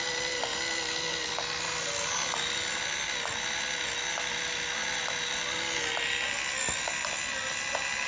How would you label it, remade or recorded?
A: recorded